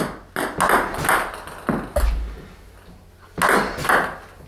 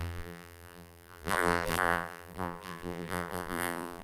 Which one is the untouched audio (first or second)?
first